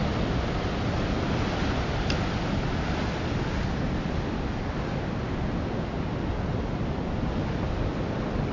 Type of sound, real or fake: real